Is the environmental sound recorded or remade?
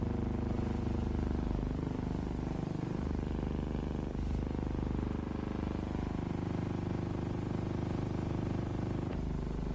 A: remade